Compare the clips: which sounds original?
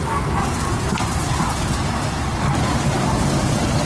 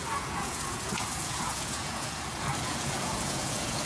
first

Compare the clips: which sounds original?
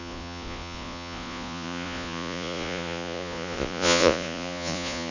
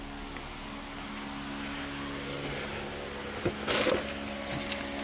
second